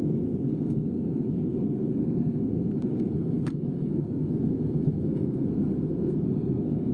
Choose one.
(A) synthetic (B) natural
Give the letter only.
A